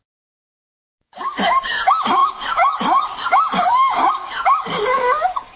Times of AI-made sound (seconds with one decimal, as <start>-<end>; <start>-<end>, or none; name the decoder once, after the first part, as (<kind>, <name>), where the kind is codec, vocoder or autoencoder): 0.0-5.6 (codec, DAC)